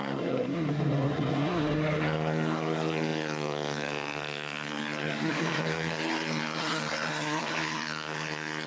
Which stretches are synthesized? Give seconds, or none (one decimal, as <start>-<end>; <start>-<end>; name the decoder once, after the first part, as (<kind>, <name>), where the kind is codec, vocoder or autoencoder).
0.0-8.7 (codec, SNAC)